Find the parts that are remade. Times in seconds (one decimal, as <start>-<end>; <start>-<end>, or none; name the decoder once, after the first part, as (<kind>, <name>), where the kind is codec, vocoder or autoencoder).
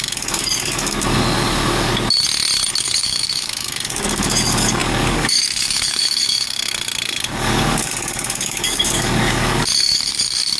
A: 0.0-1.9 (codec, DAC); 2.8-10.6